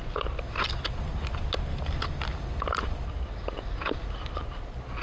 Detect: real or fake real